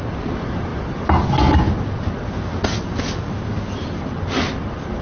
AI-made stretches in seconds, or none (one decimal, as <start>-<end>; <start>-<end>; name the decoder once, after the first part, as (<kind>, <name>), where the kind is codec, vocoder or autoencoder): none